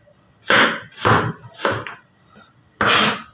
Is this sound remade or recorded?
recorded